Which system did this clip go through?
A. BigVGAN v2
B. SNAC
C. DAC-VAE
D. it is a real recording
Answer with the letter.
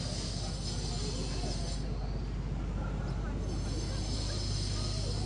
D